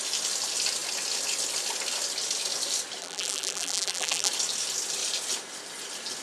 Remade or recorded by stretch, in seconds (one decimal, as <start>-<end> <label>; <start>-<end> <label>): 0.0-3.0 recorded; 3.0-4.3 remade; 4.3-6.2 recorded